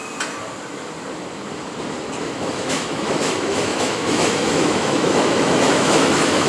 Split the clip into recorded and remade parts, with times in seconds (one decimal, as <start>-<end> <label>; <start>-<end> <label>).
0.0-2.2 recorded; 2.2-6.5 remade